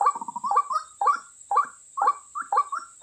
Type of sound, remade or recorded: recorded